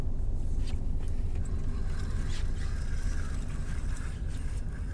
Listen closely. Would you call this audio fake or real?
real